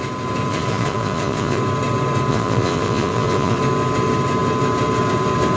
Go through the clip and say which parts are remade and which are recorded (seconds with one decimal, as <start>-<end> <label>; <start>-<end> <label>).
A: 0.0-0.5 recorded; 0.5-1.6 remade; 1.6-2.3 recorded; 2.3-3.6 remade; 3.6-5.6 recorded